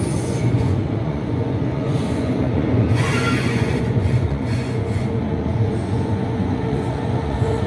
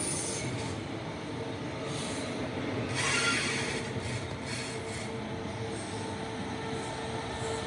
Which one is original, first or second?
second